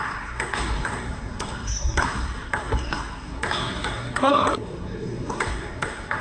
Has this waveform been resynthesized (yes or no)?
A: yes